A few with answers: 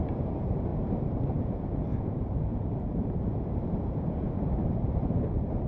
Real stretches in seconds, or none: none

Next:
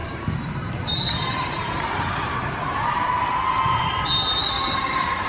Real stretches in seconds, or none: 2.3-4.4

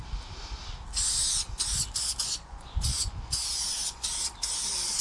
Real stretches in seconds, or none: 0.0-2.2; 4.2-5.0

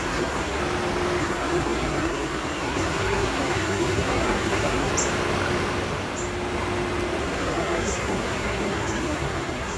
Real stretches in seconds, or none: 0.6-1.2; 4.9-7.2

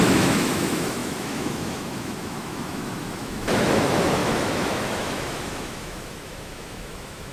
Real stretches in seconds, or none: none